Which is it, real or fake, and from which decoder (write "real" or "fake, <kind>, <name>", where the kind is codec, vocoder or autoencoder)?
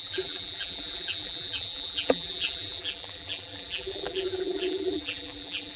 fake, vocoder, BigVGAN v2